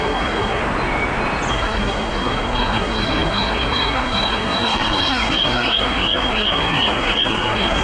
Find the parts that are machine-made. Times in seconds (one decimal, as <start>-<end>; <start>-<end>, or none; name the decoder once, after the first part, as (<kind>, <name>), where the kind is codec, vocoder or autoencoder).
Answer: 0.0-0.6 (codec, SNAC); 1.5-7.8